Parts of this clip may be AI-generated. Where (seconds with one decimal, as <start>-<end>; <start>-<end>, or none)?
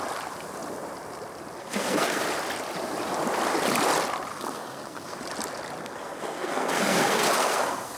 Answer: 1.6-2.2; 4.3-5.2; 5.8-8.0